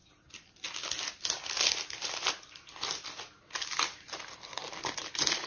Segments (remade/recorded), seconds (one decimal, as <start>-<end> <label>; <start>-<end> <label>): 0.0-5.5 recorded